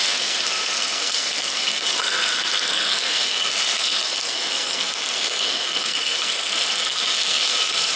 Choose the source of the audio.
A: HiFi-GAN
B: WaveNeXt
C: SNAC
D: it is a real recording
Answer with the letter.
C